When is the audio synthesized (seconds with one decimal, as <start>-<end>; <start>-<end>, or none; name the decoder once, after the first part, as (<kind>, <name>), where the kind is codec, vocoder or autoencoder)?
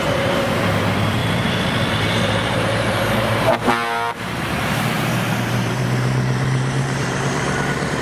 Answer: 0.0-1.2 (vocoder, BigVGAN v2); 1.9-8.0